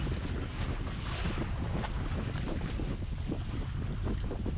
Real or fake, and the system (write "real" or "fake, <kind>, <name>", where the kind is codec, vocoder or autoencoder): real